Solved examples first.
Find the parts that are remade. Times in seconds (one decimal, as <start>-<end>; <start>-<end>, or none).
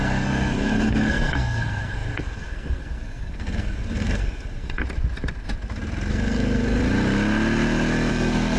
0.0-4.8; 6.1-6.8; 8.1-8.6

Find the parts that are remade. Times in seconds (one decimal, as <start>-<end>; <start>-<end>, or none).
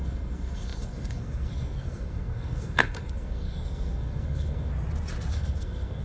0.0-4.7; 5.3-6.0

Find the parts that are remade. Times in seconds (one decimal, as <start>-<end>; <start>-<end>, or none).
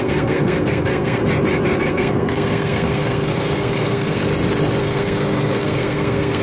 0.0-1.2; 1.8-4.2; 4.8-6.4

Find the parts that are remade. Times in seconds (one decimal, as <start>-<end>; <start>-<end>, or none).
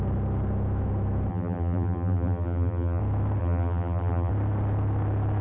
1.3-3.0; 3.4-4.3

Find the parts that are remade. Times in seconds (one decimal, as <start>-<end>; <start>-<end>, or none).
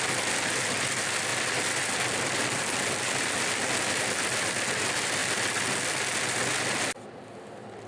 none